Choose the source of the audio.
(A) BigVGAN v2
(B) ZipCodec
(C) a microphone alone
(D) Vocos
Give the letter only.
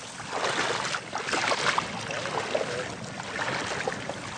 C